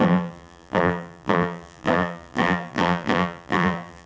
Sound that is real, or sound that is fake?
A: fake